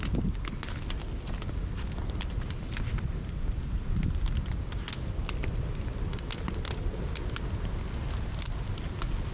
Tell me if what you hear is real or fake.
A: real